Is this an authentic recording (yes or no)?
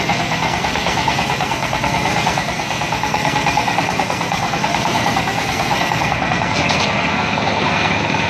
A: no